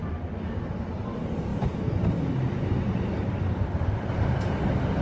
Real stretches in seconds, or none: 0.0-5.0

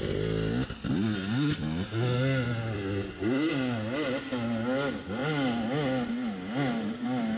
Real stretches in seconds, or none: 0.0-7.4

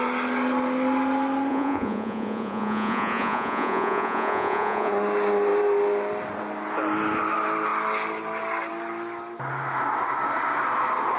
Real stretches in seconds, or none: 0.0-1.5; 4.9-11.2

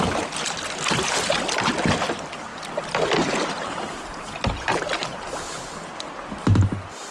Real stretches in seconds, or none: 0.0-7.1

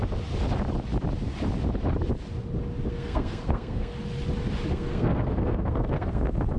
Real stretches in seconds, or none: 0.0-2.9; 3.9-4.7

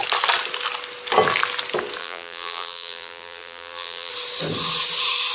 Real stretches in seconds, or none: 0.0-2.0; 4.1-5.3